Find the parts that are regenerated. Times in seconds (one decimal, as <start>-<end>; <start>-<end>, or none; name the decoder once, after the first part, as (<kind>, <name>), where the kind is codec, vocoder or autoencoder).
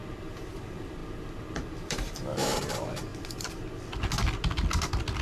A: 0.0-3.1 (vocoder, BigVGAN v2)